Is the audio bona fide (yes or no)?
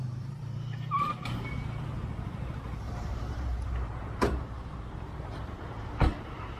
no